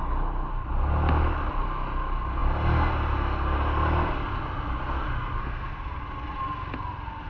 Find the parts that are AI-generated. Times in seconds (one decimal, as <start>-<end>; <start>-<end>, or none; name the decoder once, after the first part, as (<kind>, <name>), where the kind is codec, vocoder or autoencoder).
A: 5.4-6.0 (codec, SNAC)